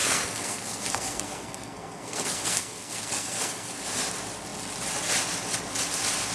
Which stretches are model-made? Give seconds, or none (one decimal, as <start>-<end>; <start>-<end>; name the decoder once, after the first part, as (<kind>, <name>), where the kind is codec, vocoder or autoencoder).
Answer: 0.0-3.8 (codec, SNAC)